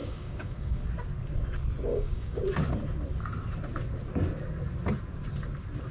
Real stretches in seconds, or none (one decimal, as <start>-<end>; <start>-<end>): 0.8-1.9; 2.4-5.9